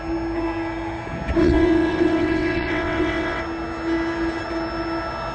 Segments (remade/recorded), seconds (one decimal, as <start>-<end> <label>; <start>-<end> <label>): 0.0-1.4 recorded; 1.4-3.4 remade; 3.4-5.3 recorded